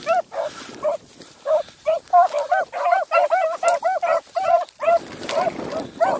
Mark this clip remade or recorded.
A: recorded